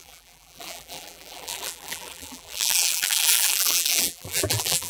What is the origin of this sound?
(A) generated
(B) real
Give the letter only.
A